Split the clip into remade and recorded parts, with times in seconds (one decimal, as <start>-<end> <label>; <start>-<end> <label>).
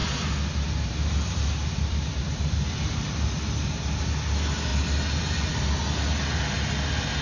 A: 0.0-3.0 remade; 3.0-4.7 recorded; 4.7-5.5 remade; 5.5-7.2 recorded